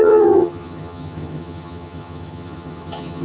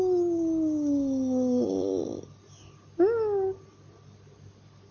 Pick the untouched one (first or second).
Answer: second